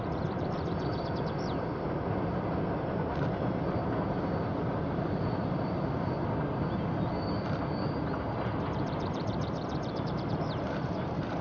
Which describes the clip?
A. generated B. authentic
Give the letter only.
B